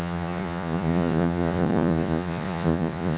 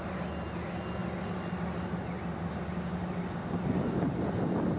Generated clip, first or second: first